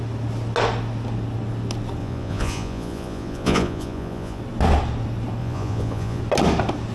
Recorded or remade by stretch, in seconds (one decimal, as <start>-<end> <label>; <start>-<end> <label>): 0.0-2.0 recorded; 2.0-4.4 remade; 4.4-5.4 recorded; 5.4-6.2 remade; 6.2-6.9 recorded